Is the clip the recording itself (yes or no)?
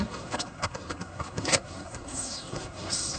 no